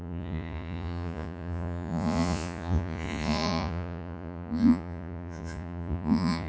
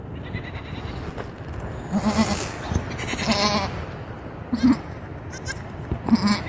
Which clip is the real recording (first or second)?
second